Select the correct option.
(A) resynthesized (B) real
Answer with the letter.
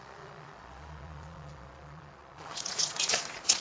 A